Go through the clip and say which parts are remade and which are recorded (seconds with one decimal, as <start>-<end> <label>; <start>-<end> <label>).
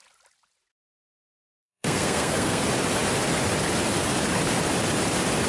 0.0-0.7 recorded; 0.7-2.6 remade; 2.6-5.5 recorded